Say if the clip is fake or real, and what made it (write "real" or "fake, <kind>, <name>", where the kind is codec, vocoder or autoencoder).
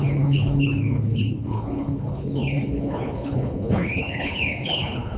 fake, codec, HILCodec